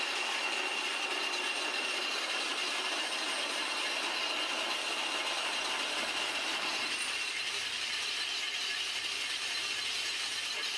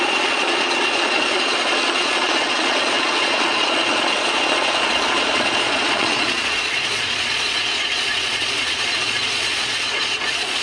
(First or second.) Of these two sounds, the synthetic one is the second